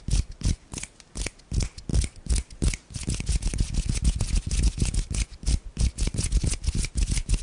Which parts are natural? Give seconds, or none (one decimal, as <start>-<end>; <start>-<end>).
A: 0.0-7.4